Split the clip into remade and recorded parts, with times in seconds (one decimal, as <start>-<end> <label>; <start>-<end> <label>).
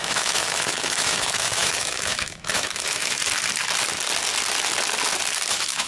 0.0-3.2 remade; 3.2-5.5 recorded; 5.5-5.9 remade